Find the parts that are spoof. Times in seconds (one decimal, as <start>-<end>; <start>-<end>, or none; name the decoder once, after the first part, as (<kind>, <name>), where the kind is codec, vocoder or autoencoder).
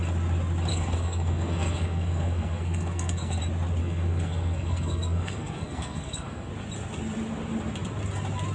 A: 0.7-3.4 (codec, SNAC); 3.8-6.5